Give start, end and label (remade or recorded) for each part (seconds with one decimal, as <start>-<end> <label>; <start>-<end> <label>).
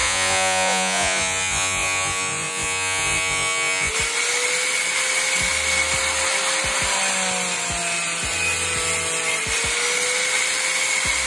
0.0-3.9 remade; 3.9-11.3 recorded